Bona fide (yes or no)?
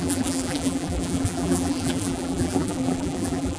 no